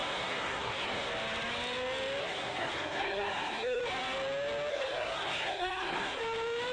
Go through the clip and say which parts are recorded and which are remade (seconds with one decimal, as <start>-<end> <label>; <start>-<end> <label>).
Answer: 0.0-1.1 remade; 1.1-2.2 recorded; 2.2-3.8 remade; 3.8-4.7 recorded; 4.7-6.2 remade; 6.2-6.7 recorded